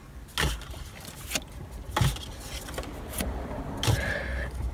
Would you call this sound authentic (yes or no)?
yes